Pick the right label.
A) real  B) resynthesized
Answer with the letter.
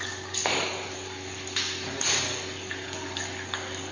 B